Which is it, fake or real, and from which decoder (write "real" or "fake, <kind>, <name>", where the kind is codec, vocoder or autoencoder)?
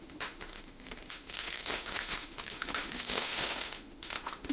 fake, autoencoder, DAC-VAE